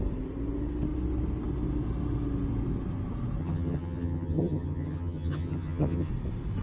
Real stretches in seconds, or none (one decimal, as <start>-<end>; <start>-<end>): 0.0-3.4; 6.1-6.6